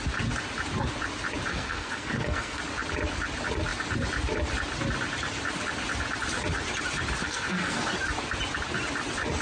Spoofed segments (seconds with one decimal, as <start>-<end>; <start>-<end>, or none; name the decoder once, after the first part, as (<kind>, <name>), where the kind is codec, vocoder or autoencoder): 1.5-2.6 (codec, SNAC); 7.2-7.9